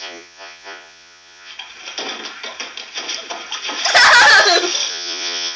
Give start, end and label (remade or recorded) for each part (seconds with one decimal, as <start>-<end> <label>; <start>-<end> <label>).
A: 0.0-1.5 remade; 1.5-4.9 recorded; 4.9-5.6 remade